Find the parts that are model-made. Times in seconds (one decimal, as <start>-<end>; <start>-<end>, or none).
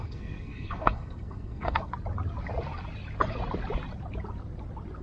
0.0-1.9